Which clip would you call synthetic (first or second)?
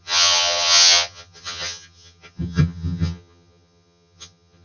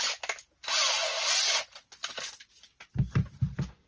first